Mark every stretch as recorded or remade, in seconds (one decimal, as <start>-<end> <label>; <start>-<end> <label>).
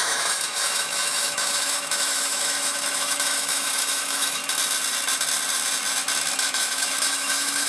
0.0-4.4 remade; 4.4-6.5 recorded; 6.5-7.7 remade